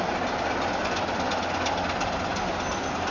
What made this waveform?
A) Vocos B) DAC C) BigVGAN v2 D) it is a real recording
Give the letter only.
D